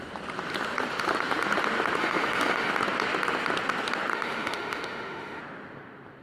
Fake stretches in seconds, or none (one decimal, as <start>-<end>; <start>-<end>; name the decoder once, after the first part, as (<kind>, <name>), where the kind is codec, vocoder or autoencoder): 2.0-2.7 (autoencoder, DAC-VAE); 4.1-5.4